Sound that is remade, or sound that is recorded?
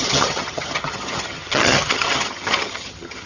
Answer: remade